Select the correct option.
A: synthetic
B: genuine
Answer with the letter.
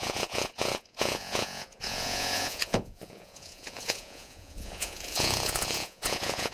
A